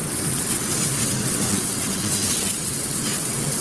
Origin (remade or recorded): remade